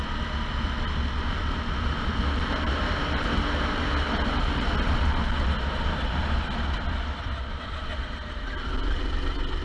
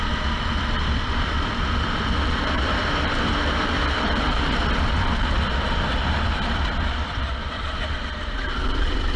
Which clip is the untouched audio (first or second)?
first